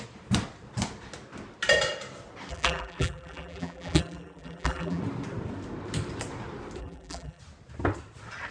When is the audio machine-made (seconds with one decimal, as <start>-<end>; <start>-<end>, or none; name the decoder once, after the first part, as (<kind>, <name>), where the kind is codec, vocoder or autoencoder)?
2.5-5.0 (vocoder, BigVGAN v2); 6.8-7.4